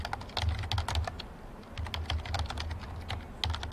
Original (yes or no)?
yes